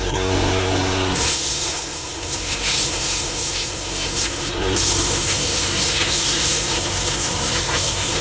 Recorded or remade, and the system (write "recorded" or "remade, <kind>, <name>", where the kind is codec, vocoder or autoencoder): remade, codec, SNAC